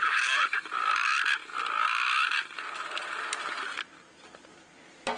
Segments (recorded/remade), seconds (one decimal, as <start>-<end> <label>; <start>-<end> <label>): 0.0-5.2 recorded